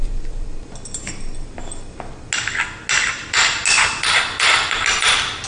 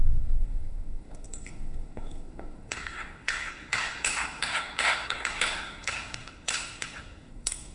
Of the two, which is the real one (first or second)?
first